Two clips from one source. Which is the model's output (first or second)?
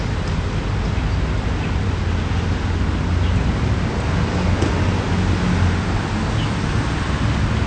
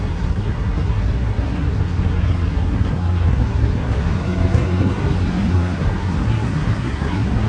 second